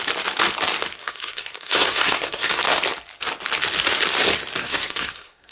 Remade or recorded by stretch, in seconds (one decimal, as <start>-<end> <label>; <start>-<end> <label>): 0.0-1.0 recorded; 1.0-2.6 remade; 2.6-4.6 recorded; 4.6-5.5 remade